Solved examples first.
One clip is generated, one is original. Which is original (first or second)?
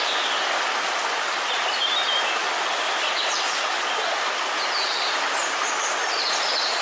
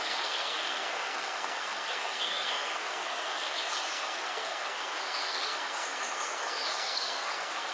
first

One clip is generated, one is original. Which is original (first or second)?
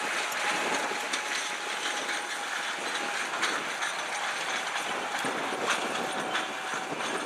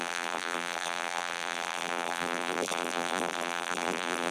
first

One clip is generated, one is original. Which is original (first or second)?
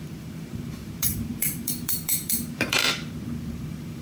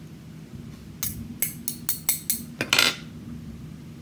second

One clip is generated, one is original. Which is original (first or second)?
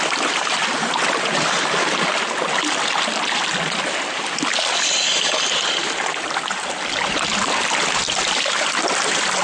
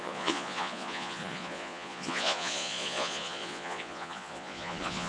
first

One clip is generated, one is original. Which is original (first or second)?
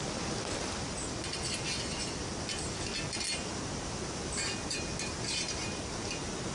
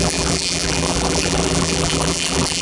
first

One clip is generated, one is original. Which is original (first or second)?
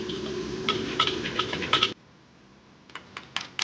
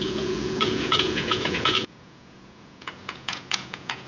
first